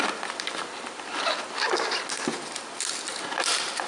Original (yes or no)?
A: yes